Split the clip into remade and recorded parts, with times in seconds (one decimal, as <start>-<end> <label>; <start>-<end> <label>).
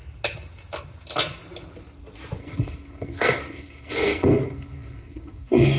0.0-2.4 recorded; 2.4-5.8 remade